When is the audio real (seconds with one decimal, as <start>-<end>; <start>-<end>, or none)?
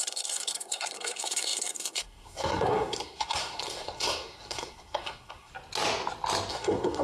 5.5-6.5